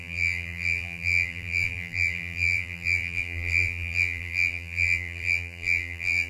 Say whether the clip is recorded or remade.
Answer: remade